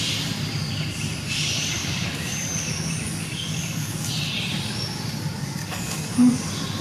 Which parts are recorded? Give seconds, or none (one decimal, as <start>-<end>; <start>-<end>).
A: 0.0-1.8; 4.1-5.6; 6.3-6.8